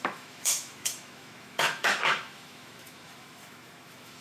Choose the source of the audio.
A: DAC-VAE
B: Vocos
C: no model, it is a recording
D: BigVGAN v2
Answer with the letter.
A